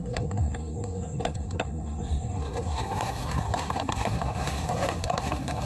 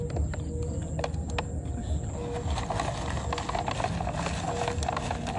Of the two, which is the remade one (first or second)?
first